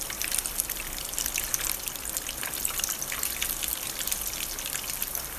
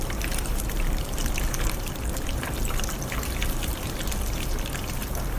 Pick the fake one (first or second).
second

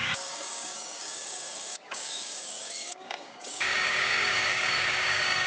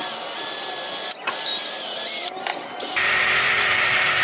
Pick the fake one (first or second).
first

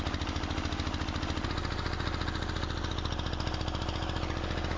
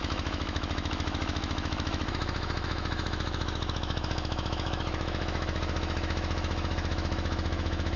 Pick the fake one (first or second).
second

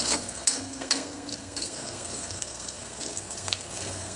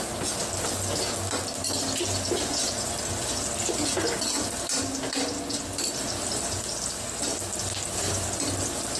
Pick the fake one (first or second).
first